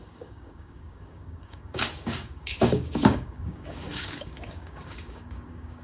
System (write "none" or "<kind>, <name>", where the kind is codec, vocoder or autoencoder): codec, DAC